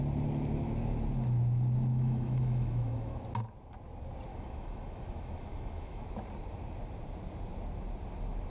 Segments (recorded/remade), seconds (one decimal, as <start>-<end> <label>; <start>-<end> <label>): 0.0-1.9 recorded; 1.9-3.2 remade; 3.2-4.3 recorded; 4.3-6.0 remade; 6.0-8.5 recorded